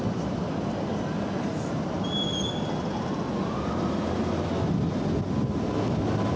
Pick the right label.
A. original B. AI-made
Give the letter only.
A